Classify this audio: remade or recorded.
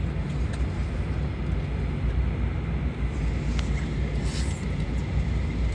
recorded